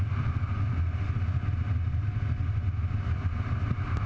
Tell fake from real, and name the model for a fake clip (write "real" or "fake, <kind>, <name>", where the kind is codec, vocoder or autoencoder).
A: real